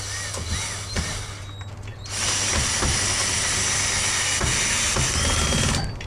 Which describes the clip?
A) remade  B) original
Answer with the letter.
B